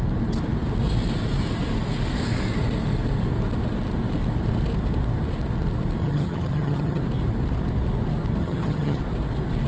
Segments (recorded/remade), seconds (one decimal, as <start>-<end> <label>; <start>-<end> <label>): 0.0-6.0 recorded; 6.0-7.0 remade; 7.0-8.4 recorded; 8.4-9.0 remade; 9.0-9.7 recorded